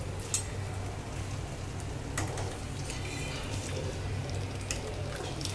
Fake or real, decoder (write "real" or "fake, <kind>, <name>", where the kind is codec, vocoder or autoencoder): real